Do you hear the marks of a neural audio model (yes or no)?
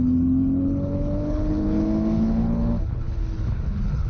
yes